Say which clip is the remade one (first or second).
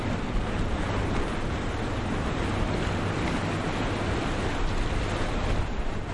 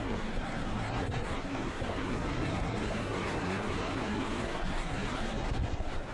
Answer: second